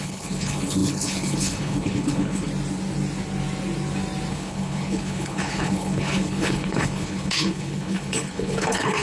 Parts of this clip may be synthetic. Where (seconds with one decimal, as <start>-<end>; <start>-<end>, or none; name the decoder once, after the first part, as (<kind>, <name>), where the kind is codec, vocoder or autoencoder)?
0.0-2.5 (codec, HILCodec); 4.3-9.0